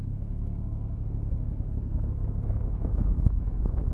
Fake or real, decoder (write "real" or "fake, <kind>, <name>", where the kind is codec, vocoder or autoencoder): fake, codec, SNAC